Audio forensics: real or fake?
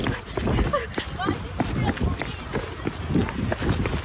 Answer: real